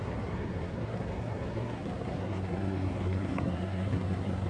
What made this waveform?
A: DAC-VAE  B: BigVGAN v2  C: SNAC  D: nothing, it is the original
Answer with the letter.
C